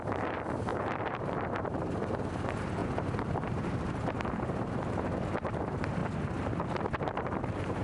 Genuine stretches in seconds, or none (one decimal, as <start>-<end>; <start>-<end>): 6.0-6.8